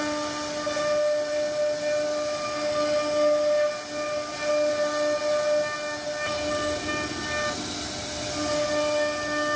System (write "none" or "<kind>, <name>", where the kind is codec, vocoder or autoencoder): none